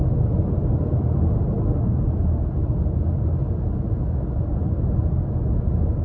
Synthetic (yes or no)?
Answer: no